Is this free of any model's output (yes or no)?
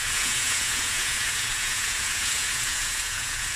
no